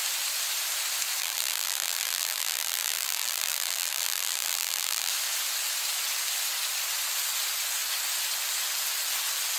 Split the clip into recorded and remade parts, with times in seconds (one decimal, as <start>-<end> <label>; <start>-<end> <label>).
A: 0.0-1.2 recorded; 1.2-5.1 remade; 5.1-9.6 recorded